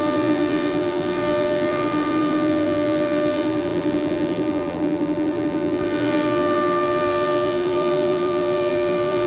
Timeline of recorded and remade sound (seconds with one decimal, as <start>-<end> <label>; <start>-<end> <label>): 0.0-9.3 remade

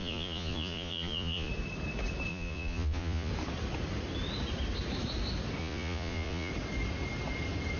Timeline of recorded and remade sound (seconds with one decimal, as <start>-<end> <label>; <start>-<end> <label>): 0.0-1.5 remade; 1.5-2.3 recorded; 2.3-3.3 remade; 3.3-5.6 recorded; 5.6-6.5 remade; 6.5-7.8 recorded

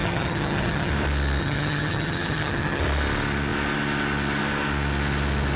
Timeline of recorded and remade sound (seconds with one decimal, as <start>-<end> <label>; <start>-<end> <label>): 0.0-0.9 remade; 0.9-1.4 recorded; 1.4-2.8 remade; 2.8-5.6 recorded

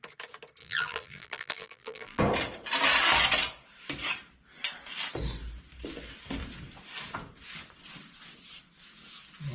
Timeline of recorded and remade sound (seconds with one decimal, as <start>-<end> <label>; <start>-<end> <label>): 0.0-0.6 recorded; 0.6-2.2 remade; 2.2-9.5 recorded

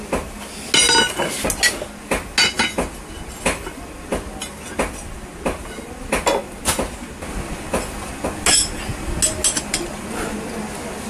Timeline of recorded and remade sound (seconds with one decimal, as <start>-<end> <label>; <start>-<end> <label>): 0.0-11.1 recorded